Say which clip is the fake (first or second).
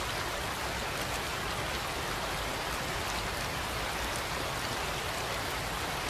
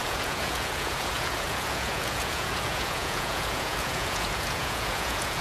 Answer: second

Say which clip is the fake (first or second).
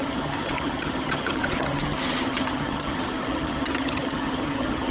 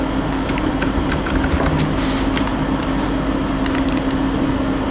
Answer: first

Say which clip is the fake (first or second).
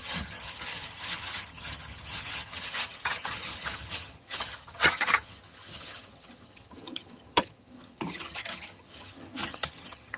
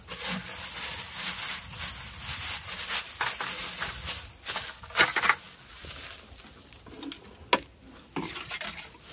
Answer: first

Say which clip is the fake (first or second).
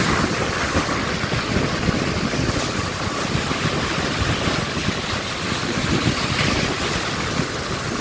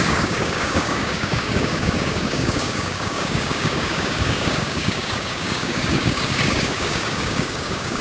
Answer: second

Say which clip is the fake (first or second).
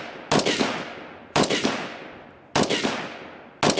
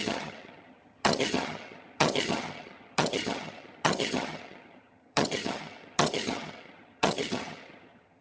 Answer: second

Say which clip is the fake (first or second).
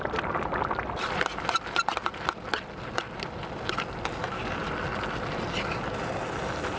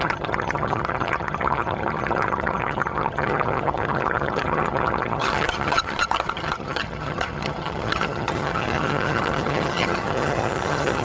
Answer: second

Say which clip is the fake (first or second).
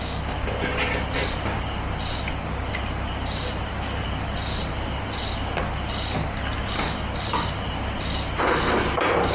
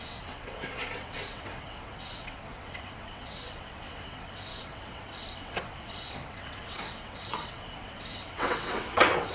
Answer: second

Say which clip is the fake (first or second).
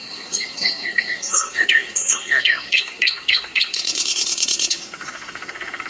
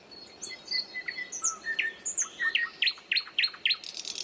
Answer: first